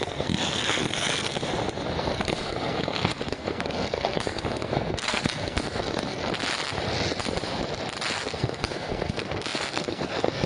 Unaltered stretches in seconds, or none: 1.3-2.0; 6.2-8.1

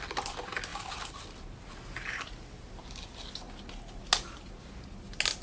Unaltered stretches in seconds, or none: 0.0-5.4